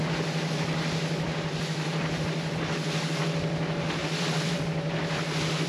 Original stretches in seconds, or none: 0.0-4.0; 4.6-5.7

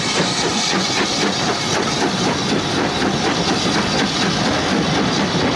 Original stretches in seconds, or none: 0.0-0.5; 1.0-5.6

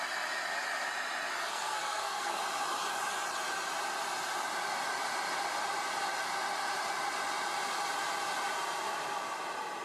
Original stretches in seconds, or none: 0.0-1.5; 2.4-9.8

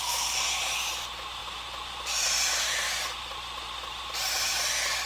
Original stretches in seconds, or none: 0.0-5.1